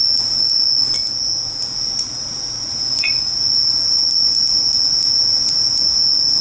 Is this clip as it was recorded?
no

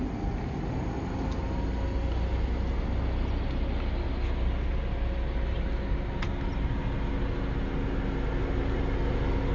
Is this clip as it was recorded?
yes